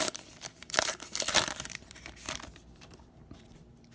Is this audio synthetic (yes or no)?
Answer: yes